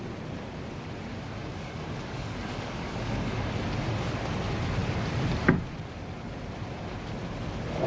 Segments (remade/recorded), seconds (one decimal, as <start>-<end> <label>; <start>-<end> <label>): 0.0-1.4 recorded; 1.4-3.5 remade; 3.5-7.9 recorded